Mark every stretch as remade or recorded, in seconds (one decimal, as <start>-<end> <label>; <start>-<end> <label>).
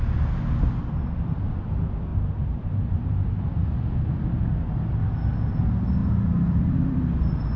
0.0-2.1 recorded; 2.1-3.3 remade; 3.3-6.0 recorded; 6.0-7.6 remade